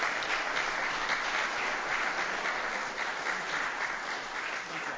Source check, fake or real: real